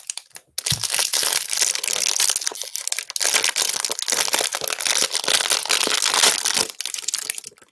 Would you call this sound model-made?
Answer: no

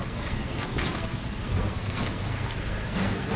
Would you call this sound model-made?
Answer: yes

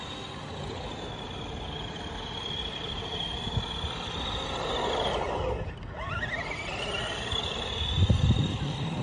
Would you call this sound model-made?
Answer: no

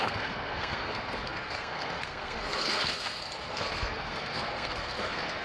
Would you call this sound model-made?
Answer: yes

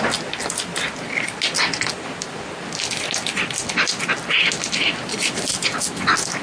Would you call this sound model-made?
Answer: no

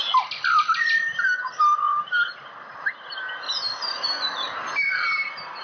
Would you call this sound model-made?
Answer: no